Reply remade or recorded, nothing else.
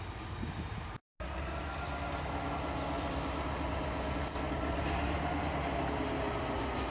recorded